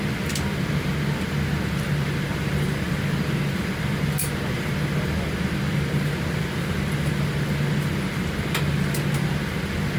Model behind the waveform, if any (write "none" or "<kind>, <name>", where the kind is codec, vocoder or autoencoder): none